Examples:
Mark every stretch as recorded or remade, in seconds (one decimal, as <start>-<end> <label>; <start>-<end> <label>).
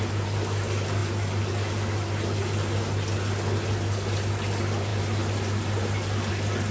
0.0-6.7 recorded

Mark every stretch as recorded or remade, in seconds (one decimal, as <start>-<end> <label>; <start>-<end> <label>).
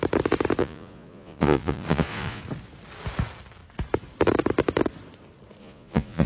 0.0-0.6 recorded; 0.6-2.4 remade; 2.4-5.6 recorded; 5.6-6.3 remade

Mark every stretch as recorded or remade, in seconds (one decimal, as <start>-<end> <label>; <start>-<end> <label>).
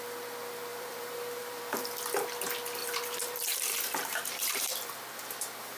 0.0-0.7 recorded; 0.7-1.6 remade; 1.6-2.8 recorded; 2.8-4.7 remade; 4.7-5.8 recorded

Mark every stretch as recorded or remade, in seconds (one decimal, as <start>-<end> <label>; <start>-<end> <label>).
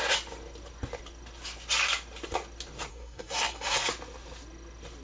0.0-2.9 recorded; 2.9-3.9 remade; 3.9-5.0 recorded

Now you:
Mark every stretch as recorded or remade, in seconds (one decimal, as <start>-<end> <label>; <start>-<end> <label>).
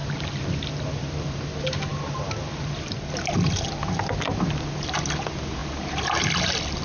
0.0-6.8 recorded